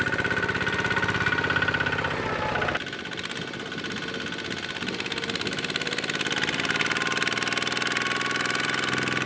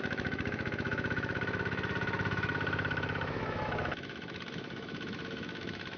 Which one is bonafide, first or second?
first